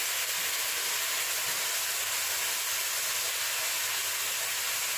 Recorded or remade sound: recorded